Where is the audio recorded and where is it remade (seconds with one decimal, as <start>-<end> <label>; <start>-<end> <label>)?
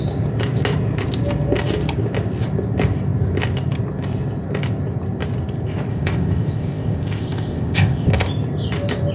0.0-5.9 recorded; 5.9-8.1 remade; 8.1-9.1 recorded